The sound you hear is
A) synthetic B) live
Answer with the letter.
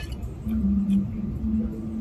B